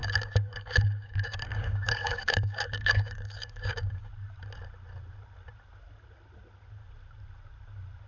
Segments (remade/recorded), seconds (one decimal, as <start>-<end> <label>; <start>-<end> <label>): 0.0-4.1 remade; 4.1-8.1 recorded